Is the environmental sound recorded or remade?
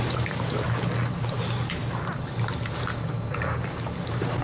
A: recorded